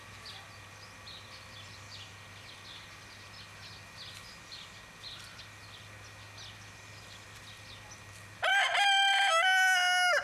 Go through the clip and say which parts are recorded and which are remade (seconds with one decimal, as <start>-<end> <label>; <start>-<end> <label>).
0.0-10.2 recorded